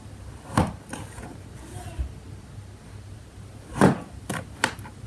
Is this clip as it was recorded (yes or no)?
yes